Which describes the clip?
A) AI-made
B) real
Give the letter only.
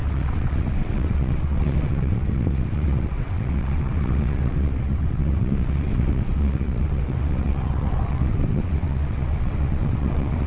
A